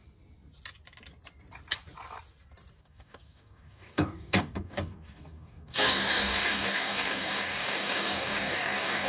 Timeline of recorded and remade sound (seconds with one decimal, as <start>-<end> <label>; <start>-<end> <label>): 0.0-2.8 recorded; 2.8-9.1 remade